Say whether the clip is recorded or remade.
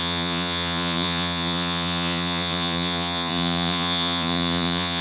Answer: remade